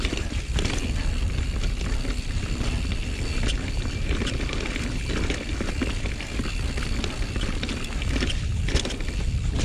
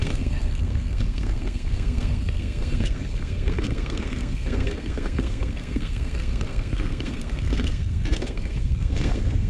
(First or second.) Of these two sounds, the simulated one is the second